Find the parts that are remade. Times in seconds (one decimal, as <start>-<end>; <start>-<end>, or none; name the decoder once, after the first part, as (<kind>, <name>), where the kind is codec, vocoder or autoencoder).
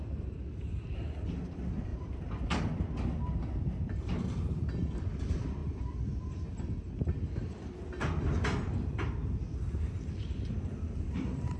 0.0-5.6 (vocoder, BigVGAN v2); 10.1-11.6